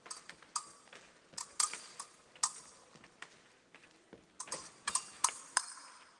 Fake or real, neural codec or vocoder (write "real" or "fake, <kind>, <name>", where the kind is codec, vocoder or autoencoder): real